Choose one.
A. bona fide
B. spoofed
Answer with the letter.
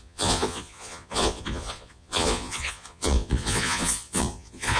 B